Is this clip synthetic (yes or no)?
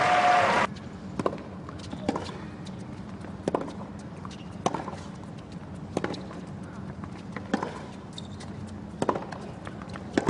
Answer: no